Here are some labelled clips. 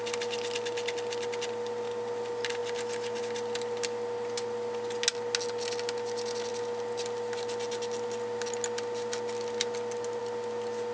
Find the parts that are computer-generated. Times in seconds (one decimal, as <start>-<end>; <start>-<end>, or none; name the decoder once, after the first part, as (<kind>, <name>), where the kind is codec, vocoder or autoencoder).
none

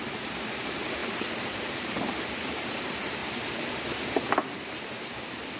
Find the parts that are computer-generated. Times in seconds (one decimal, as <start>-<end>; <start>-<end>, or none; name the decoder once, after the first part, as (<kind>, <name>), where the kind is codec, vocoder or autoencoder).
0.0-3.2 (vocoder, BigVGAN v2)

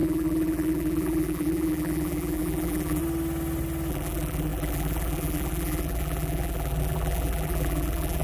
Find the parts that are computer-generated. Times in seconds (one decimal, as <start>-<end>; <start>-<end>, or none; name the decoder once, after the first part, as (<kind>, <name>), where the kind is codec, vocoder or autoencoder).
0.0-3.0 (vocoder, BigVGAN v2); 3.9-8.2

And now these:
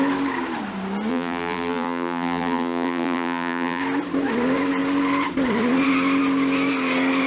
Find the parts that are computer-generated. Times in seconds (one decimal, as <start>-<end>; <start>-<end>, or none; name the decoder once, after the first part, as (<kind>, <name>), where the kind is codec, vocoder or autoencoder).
1.1-3.8 (vocoder, BigVGAN v2)